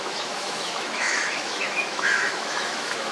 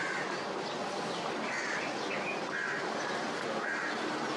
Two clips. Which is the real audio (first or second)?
second